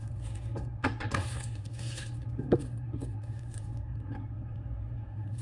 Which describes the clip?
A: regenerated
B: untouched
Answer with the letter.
A